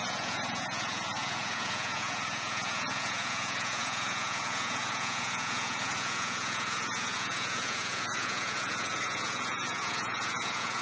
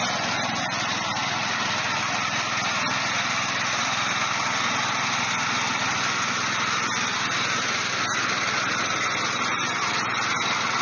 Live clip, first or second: second